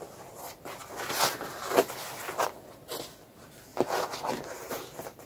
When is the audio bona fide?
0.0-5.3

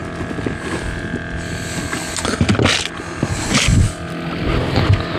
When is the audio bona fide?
0.0-5.2

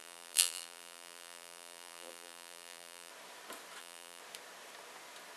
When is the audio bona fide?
3.1-3.8; 4.2-5.4

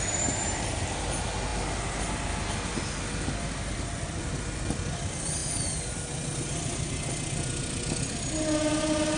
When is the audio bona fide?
0.0-9.2